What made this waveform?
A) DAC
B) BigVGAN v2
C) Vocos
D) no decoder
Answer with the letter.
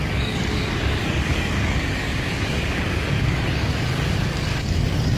A